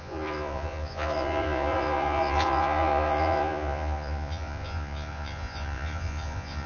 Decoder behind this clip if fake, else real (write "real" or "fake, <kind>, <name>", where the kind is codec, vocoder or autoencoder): fake, vocoder, Vocos